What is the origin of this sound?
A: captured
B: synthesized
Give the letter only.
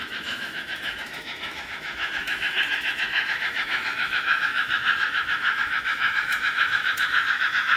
B